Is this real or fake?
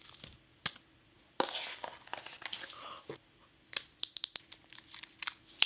real